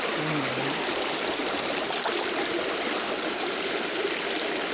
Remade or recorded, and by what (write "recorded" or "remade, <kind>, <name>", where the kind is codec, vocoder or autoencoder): recorded